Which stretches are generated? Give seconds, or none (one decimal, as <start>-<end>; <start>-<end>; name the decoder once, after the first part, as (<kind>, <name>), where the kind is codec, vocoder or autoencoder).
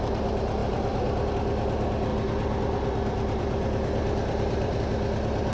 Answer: 0.6-1.3 (vocoder, BigVGAN v2); 2.1-4.8